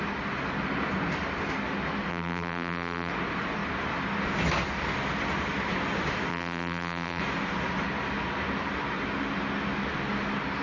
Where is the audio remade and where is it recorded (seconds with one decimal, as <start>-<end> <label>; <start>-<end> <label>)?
0.0-2.1 recorded; 2.1-3.1 remade; 3.1-6.3 recorded; 6.3-7.2 remade; 7.2-10.6 recorded